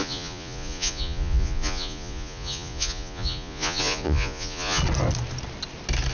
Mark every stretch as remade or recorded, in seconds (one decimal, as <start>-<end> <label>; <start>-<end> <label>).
0.0-4.8 remade; 4.8-6.1 recorded